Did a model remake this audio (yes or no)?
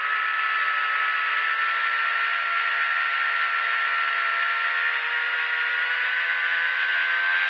no